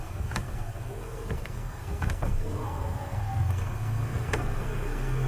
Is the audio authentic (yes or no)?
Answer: no